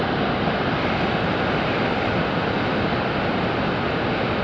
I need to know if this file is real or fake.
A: real